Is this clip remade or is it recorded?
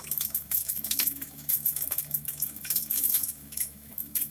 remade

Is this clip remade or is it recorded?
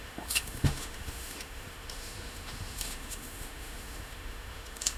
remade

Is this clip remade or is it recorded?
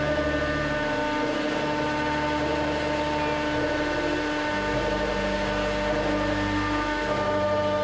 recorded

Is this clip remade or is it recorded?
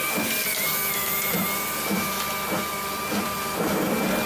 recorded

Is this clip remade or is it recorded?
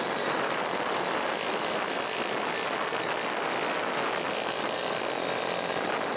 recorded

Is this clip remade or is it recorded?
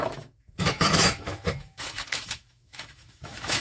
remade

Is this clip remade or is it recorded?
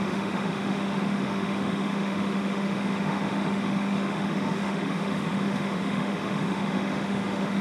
remade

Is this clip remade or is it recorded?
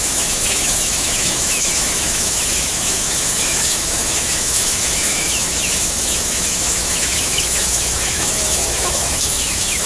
remade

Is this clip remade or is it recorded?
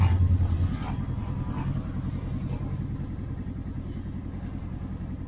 recorded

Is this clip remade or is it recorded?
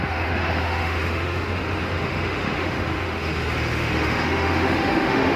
remade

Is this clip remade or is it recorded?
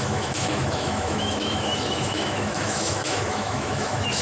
remade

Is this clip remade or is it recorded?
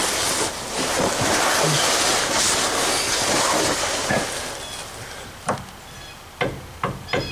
recorded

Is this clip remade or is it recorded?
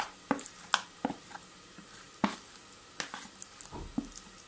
recorded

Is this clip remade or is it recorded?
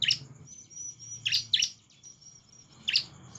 recorded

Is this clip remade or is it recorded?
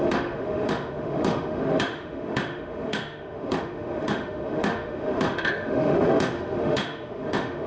remade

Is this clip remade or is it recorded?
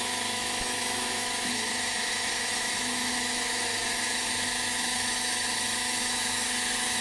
remade